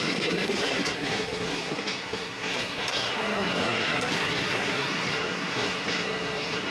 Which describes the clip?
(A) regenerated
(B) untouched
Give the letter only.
A